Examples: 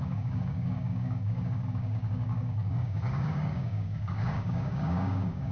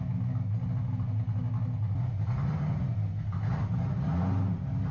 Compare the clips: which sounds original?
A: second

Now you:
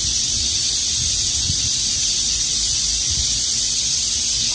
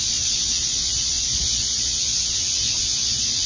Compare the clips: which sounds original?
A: first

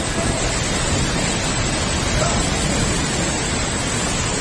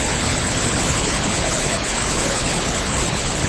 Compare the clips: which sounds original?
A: first